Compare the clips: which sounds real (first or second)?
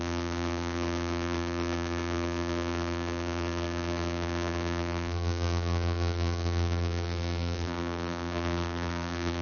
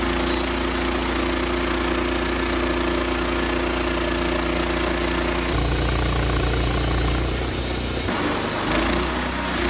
second